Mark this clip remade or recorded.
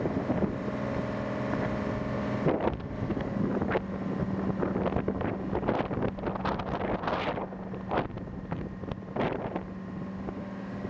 recorded